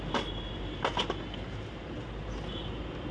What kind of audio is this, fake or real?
real